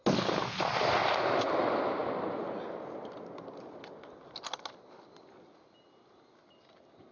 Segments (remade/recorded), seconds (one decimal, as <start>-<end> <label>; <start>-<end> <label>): 0.0-7.1 recorded